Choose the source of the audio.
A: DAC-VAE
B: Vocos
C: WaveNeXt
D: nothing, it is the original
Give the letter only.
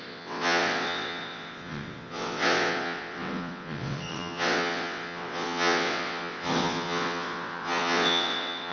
C